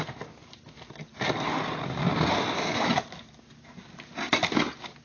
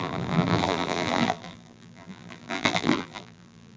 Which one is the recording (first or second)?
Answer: first